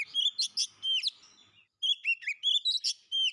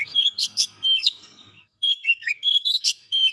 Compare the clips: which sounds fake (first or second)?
second